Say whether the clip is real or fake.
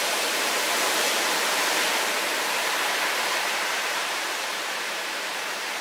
fake